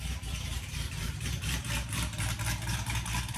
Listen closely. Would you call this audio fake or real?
fake